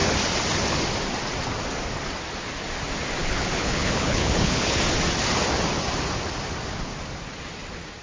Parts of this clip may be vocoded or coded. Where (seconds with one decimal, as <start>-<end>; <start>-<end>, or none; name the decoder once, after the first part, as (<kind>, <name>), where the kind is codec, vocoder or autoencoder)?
3.2-4.8 (codec, HILCodec)